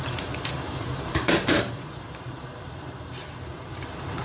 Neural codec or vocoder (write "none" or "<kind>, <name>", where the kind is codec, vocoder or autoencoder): vocoder, BigVGAN v2